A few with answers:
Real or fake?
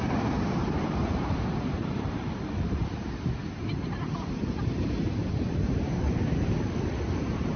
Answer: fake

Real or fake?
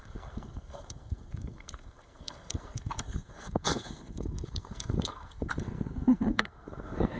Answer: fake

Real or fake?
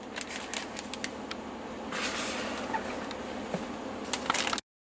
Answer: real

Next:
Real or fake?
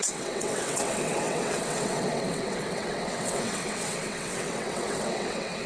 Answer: fake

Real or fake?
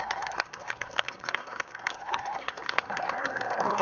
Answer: fake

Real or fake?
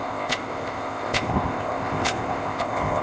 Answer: fake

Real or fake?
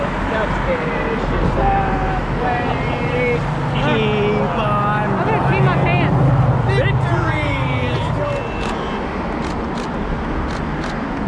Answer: real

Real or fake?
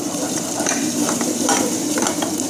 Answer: fake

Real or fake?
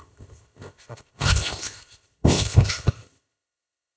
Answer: fake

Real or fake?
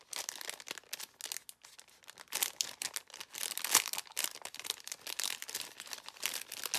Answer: real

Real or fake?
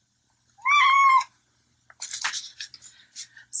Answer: real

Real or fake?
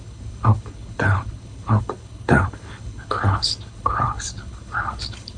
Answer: fake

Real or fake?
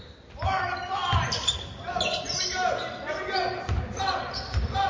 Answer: real